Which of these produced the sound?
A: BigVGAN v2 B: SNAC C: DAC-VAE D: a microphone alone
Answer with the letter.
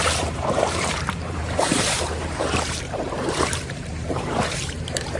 A